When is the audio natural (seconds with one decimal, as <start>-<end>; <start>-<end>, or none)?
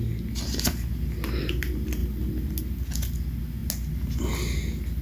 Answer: 0.0-5.0